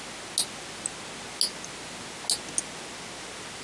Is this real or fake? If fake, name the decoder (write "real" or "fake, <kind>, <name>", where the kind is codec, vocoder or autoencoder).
real